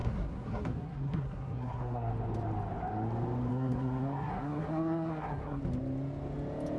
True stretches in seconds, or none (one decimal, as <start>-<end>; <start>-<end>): 2.1-3.5; 5.6-6.8